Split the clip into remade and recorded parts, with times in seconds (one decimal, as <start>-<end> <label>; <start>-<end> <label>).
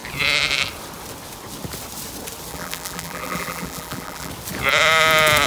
0.0-2.5 recorded; 2.5-4.3 remade; 4.3-5.5 recorded